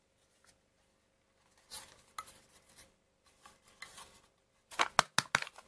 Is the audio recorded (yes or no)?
yes